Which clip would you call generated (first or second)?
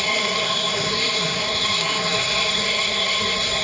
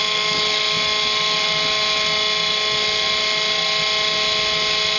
first